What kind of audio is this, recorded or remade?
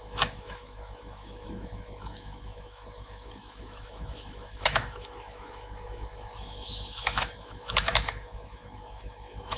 remade